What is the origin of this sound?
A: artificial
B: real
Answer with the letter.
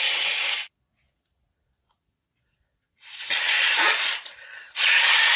A